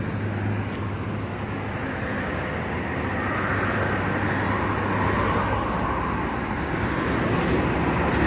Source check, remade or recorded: recorded